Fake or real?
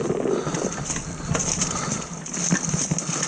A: real